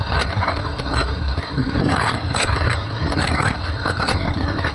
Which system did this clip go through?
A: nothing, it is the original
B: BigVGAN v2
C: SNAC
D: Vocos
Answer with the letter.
C